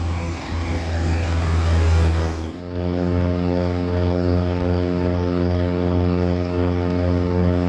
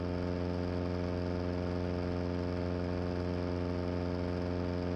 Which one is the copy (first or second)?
first